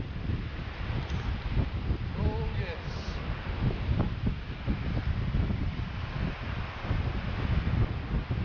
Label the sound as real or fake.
real